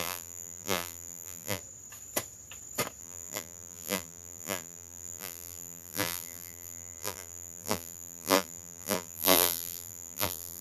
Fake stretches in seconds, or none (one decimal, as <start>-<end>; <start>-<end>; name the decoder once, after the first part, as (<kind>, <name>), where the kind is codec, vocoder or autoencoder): 0.0-1.6 (vocoder, BigVGAN v2); 3.0-10.6

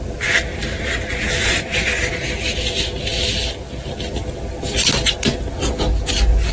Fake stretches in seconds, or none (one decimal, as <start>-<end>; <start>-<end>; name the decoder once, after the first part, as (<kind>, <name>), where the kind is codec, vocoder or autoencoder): 0.5-1.3 (vocoder, BigVGAN v2)

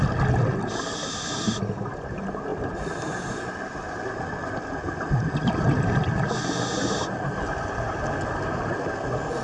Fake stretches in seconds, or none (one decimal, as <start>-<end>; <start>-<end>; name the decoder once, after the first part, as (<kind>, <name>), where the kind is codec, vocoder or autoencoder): 2.5-4.2 (vocoder, BigVGAN v2)

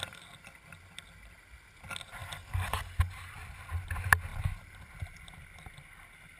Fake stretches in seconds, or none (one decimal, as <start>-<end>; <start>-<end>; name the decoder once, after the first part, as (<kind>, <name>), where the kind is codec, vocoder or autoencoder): 2.2-3.0 (vocoder, BigVGAN v2)